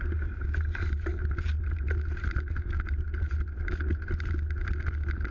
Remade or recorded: recorded